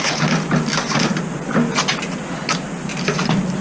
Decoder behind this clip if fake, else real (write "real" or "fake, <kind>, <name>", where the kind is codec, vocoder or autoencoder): real